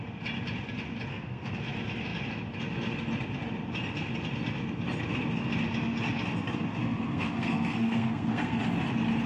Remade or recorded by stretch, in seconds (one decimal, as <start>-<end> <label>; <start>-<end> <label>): 0.0-1.1 recorded; 1.1-1.6 remade; 1.6-6.8 recorded; 6.8-8.6 remade; 8.6-9.3 recorded